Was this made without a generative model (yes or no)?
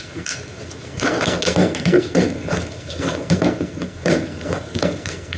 no